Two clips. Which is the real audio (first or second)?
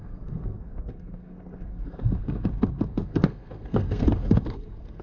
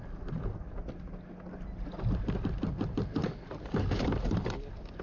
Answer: second